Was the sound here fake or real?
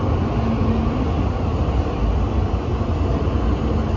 real